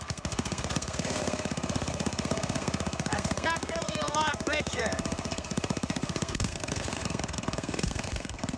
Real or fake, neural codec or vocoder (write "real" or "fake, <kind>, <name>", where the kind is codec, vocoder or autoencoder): fake, codec, SNAC